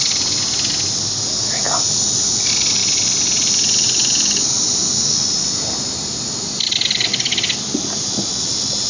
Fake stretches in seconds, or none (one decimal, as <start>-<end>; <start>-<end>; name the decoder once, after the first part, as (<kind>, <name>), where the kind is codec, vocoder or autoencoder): none